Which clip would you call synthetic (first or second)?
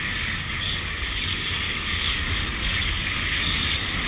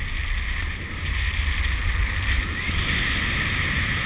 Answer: first